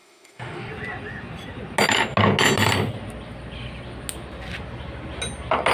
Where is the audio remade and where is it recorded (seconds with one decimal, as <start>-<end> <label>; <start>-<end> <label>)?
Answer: 0.0-0.7 remade; 0.7-5.7 recorded